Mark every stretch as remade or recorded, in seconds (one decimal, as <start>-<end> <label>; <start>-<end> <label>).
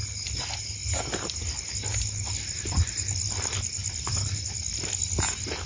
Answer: 0.0-5.7 recorded